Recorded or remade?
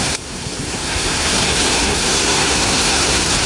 remade